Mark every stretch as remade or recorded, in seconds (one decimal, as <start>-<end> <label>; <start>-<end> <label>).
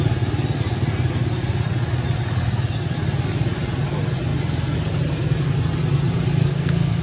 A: 0.0-6.4 recorded; 6.4-7.0 remade